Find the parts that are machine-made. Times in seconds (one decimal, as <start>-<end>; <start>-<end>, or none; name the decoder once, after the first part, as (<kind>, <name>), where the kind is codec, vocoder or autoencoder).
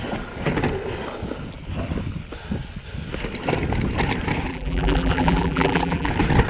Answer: 4.5-6.1 (vocoder, BigVGAN v2)